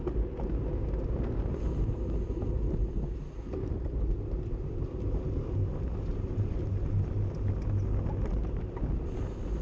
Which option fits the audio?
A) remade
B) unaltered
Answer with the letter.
B